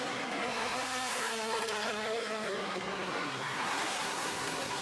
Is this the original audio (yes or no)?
no